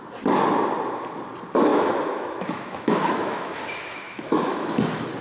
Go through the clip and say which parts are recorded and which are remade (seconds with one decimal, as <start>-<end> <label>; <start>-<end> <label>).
0.0-1.7 recorded; 1.7-4.8 remade; 4.8-5.2 recorded